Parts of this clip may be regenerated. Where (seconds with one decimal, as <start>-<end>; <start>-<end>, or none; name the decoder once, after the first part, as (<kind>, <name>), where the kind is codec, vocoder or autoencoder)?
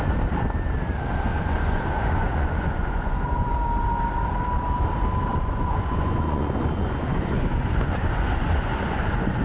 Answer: 1.3-3.5 (vocoder, Vocos); 5.3-9.4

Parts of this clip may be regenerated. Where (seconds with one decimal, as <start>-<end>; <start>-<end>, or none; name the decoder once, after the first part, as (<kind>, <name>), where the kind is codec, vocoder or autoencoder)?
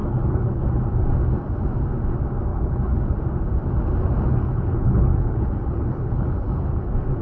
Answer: 0.0-0.7 (codec, HILCodec); 2.5-3.2; 4.3-6.8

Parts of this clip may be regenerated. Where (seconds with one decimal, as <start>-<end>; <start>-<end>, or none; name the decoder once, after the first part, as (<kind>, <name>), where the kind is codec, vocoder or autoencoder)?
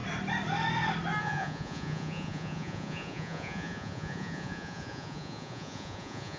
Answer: 1.2-6.4 (vocoder, Vocos)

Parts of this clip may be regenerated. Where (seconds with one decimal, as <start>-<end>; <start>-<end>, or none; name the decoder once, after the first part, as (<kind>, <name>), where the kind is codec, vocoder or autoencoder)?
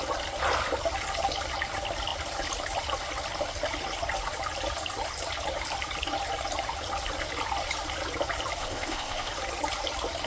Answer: 8.6-9.3 (codec, ZipCodec)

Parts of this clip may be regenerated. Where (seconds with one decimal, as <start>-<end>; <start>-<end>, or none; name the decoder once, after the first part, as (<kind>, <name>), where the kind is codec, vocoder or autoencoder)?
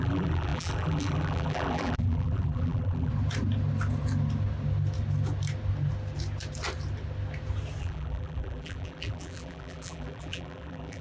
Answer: 0.0-3.1 (vocoder, BigVGAN v2); 7.8-11.0